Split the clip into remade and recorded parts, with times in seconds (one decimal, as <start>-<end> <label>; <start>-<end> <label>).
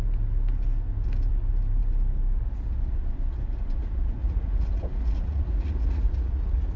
0.0-4.2 recorded; 4.2-6.8 remade